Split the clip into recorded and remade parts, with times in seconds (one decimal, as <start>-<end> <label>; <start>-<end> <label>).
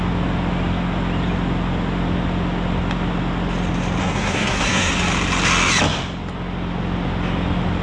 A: 0.0-4.0 recorded; 4.0-4.9 remade; 4.9-7.8 recorded